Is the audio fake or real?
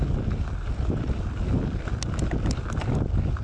real